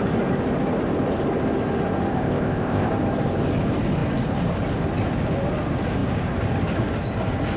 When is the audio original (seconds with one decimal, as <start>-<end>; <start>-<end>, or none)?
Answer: 0.0-2.1; 2.9-7.6